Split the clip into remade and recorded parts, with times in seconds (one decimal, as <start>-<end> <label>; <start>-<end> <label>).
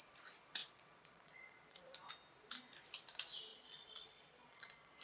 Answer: 0.0-0.6 recorded; 0.6-2.1 remade; 2.1-3.5 recorded; 3.5-5.0 remade